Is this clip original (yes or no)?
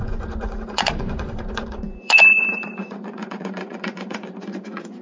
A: no